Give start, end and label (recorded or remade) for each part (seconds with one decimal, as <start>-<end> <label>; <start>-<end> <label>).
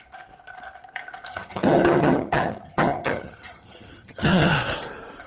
0.0-1.3 recorded; 1.3-4.5 remade; 4.5-5.3 recorded